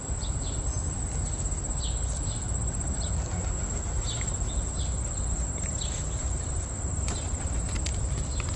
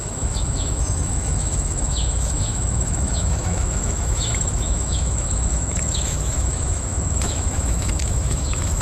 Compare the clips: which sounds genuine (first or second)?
first